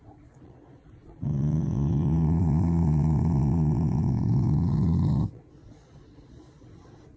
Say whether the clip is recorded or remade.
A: remade